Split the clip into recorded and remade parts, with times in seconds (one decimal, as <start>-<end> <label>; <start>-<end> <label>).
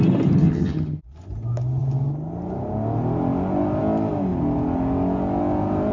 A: 0.0-0.4 recorded; 0.4-1.0 remade; 1.0-5.9 recorded